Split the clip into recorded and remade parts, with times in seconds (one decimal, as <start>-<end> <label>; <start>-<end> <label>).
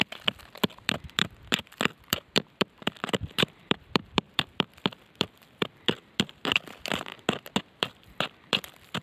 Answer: 0.0-7.1 remade; 7.1-7.6 recorded; 7.6-9.0 remade